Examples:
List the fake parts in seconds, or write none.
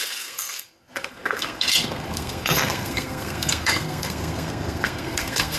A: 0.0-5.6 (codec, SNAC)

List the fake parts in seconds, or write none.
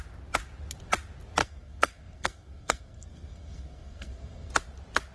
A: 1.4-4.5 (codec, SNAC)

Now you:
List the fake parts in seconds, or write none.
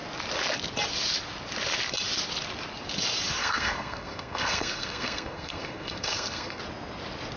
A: 3.4-6.6 (codec, SNAC)